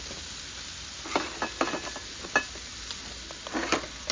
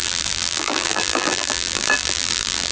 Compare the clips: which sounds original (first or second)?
first